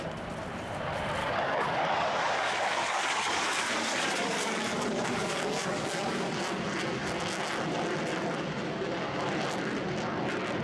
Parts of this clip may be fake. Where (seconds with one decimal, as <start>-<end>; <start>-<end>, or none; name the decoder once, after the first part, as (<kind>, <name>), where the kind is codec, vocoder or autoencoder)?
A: 1.2-6.3 (codec, DAC)